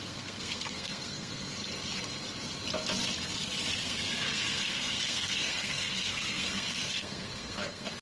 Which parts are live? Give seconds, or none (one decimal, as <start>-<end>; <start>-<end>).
1.6-3.8